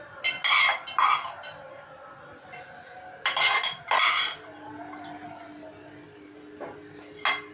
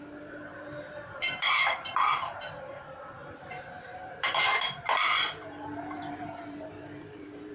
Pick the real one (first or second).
first